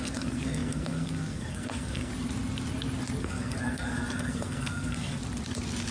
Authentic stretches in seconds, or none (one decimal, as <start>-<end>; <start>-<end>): 2.1-3.2; 5.2-5.9